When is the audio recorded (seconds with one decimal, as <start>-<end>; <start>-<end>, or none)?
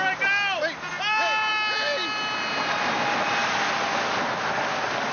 0.0-5.1